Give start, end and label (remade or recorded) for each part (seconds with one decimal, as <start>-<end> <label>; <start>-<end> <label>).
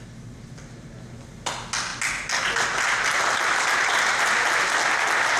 0.0-5.4 recorded